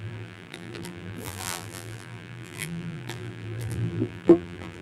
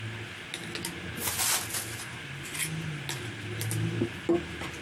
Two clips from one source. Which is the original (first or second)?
second